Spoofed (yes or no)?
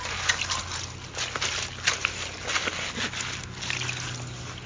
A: no